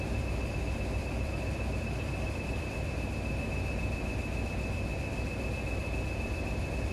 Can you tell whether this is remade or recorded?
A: recorded